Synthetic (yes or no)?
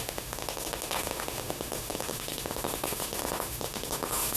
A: yes